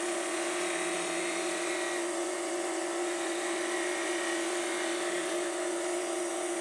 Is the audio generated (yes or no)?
yes